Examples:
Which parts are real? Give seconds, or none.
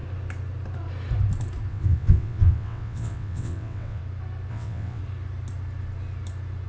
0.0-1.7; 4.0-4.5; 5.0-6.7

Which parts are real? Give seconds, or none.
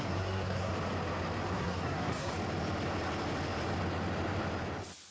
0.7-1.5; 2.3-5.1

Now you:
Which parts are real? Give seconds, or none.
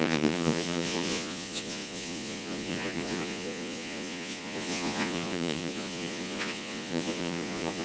none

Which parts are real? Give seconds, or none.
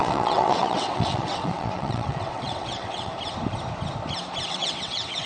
3.1-4.5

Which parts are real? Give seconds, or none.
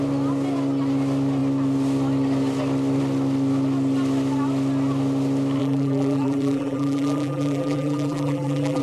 0.0-5.6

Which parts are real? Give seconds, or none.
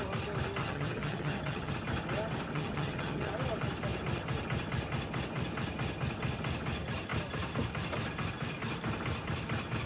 0.0-0.6; 1.7-2.5; 3.3-9.9